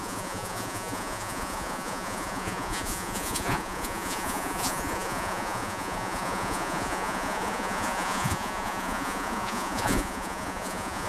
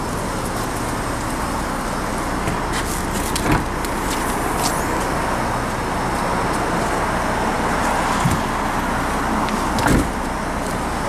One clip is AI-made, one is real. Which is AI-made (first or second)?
first